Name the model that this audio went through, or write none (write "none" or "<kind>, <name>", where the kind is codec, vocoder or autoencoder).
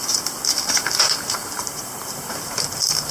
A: vocoder, BigVGAN v2